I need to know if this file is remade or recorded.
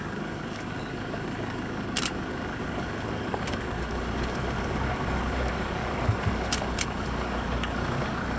remade